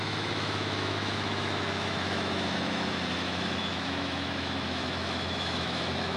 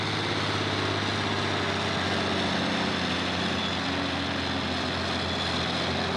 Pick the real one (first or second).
second